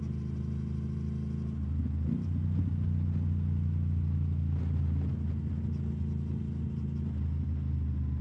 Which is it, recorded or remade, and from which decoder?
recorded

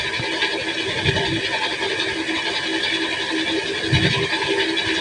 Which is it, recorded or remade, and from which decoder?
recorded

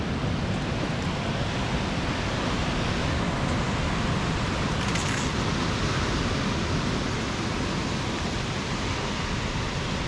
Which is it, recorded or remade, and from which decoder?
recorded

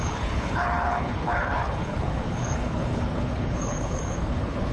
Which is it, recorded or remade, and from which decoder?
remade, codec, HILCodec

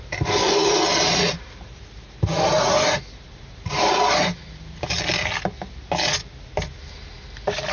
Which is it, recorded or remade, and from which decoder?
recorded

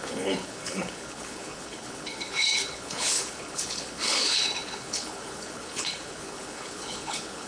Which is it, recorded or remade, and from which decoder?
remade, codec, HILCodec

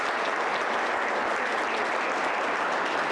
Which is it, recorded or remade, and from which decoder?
recorded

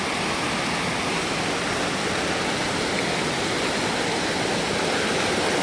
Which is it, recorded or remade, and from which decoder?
recorded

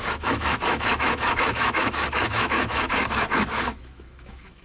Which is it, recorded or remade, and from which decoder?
remade, autoencoder, DAC-VAE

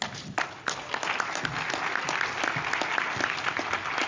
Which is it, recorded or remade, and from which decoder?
recorded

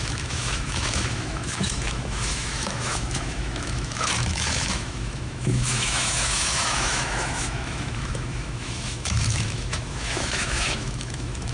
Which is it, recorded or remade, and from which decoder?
remade, autoencoder, DAC-VAE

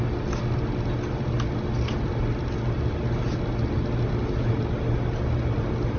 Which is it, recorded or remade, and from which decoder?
recorded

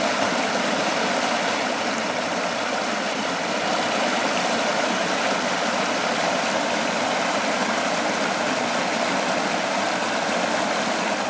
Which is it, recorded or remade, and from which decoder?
remade, vocoder, BigVGAN v2